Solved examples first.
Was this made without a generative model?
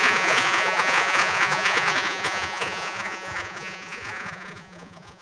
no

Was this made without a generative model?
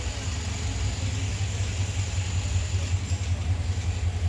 yes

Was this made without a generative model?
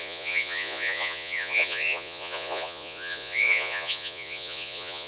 no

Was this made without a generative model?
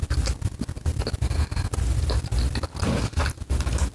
yes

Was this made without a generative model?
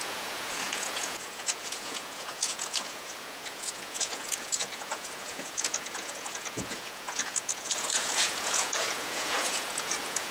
no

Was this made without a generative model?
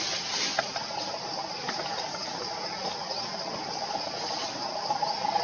yes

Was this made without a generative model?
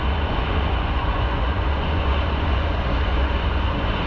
no